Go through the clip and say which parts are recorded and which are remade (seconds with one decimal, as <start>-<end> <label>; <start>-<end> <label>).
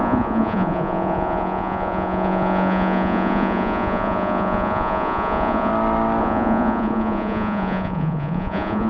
0.0-5.7 remade; 5.7-6.2 recorded; 6.2-8.9 remade